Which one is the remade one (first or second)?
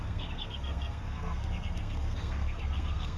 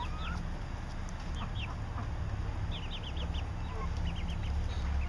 first